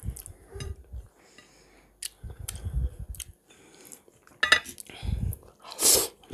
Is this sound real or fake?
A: real